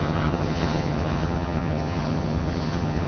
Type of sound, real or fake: fake